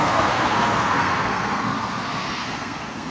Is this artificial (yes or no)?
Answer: yes